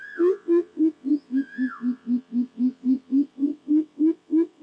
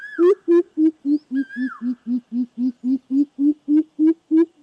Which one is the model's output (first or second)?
first